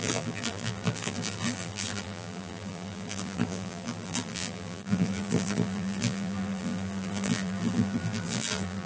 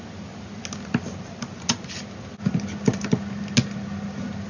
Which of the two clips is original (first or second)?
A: second